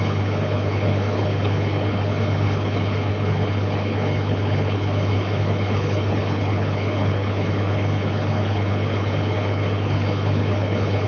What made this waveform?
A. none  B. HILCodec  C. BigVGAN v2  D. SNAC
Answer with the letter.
B